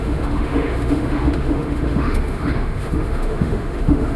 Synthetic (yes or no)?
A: yes